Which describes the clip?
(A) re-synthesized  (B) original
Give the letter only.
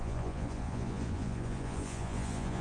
A